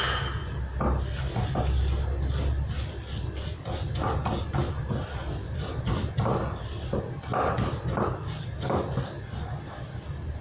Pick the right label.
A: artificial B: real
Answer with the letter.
B